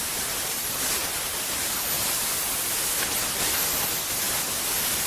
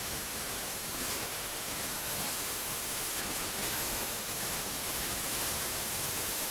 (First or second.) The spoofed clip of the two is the second